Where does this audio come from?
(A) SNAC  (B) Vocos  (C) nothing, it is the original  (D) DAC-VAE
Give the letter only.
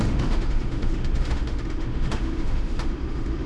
D